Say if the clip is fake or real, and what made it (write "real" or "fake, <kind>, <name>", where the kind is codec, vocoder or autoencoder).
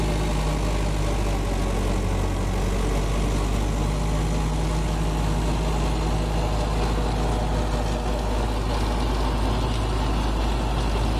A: real